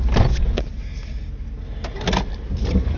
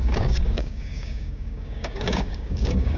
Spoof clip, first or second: second